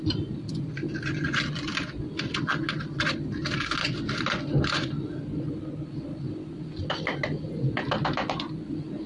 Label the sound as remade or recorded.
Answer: recorded